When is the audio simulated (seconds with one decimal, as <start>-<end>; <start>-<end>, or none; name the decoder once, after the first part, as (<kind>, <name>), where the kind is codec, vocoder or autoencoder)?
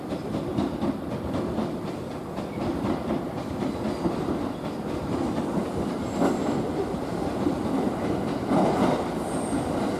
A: none